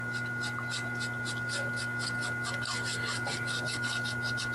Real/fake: real